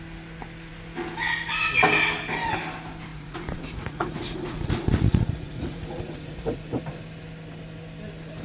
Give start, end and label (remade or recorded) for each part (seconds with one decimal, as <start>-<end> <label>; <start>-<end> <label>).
0.0-3.1 recorded; 3.1-6.9 remade; 6.9-8.4 recorded